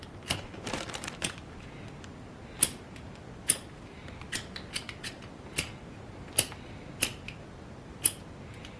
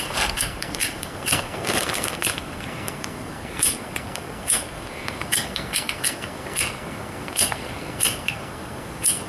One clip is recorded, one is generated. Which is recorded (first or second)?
first